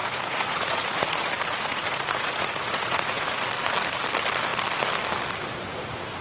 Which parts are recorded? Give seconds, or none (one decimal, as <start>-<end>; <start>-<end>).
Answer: 3.4-6.2